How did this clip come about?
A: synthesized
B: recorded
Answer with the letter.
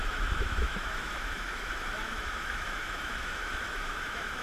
A